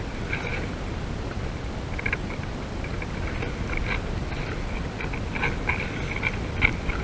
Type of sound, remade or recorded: recorded